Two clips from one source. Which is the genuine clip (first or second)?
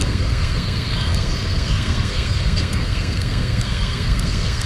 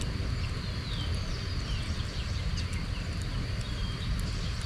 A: second